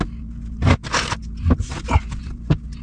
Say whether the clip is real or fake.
real